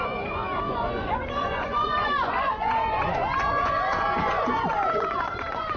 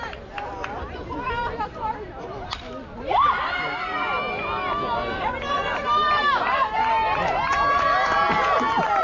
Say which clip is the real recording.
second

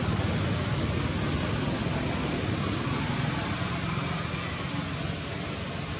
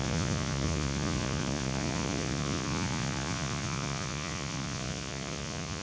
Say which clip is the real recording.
first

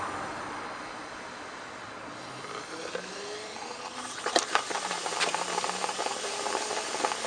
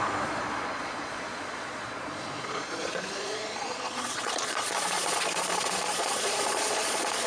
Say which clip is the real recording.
first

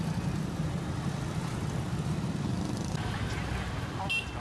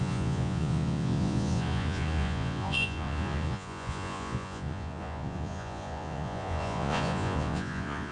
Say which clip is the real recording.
first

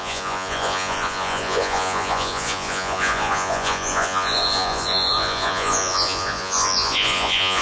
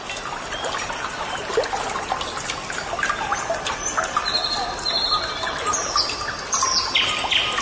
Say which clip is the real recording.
second